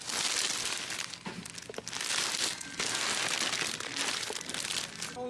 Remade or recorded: recorded